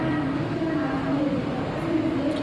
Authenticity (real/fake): real